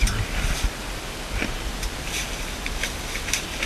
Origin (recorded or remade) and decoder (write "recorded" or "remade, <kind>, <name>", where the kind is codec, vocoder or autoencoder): recorded